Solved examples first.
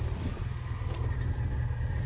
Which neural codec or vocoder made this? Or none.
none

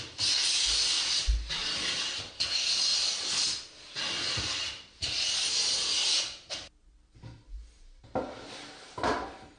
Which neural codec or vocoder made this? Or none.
none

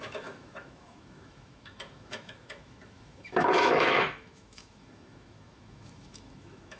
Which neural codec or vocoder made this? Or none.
autoencoder, DAC-VAE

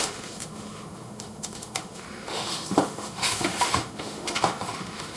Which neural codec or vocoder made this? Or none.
autoencoder, DAC-VAE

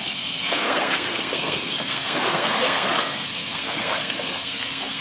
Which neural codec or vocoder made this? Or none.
codec, SNAC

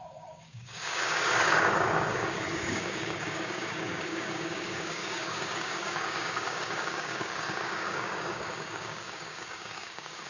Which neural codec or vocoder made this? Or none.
codec, DAC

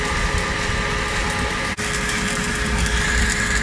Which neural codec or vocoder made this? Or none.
none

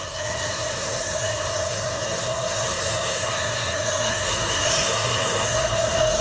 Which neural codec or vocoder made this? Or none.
codec, SNAC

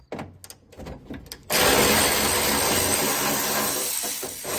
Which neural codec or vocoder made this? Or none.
none